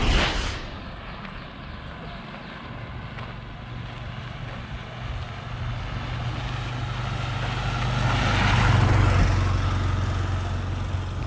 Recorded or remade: recorded